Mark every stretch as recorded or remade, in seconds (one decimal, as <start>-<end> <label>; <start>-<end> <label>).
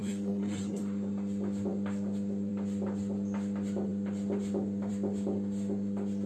0.0-0.8 remade; 0.8-6.3 recorded